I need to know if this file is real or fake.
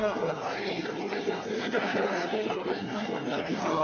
fake